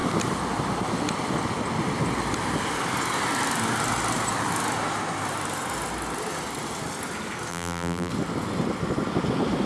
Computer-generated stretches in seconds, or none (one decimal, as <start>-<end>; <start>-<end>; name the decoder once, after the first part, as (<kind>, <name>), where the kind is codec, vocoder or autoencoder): 7.5-8.1 (vocoder, BigVGAN v2)